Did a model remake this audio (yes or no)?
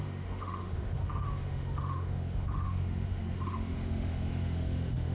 yes